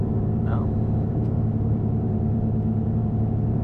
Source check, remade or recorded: remade